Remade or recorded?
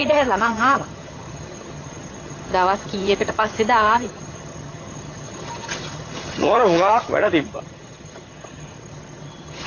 remade